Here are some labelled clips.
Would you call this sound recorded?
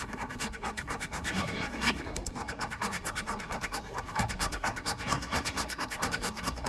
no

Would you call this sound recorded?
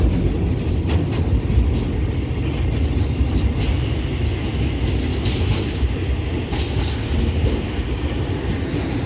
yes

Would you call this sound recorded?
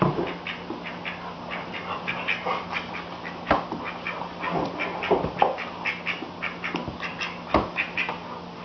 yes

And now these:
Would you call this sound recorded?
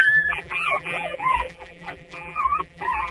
no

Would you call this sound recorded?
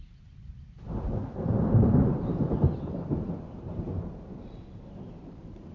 no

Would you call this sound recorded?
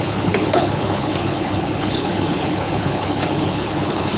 no